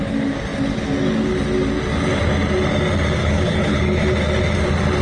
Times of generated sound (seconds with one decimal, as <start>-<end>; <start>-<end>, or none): 3.2-4.0